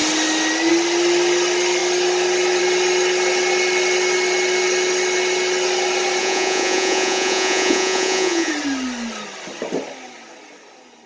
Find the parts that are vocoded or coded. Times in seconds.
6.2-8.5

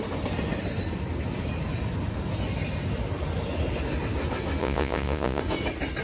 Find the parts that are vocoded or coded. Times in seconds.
4.6-5.4

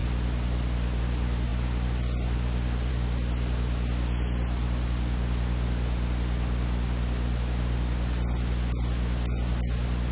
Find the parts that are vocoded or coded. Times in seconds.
none

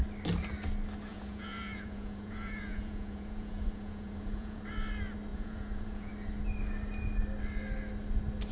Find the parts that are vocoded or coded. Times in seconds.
1.1-4.6; 5.3-6.1

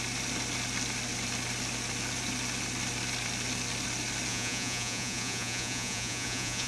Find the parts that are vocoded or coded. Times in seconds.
4.3-6.7